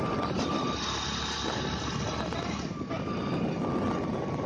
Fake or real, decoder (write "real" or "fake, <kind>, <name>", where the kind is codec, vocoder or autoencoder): real